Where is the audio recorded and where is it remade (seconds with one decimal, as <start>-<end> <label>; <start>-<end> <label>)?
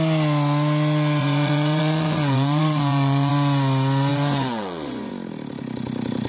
0.0-1.2 recorded; 1.2-3.3 remade; 3.3-4.1 recorded; 4.1-5.1 remade; 5.1-6.3 recorded